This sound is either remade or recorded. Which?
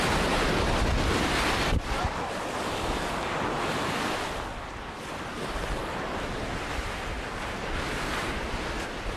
recorded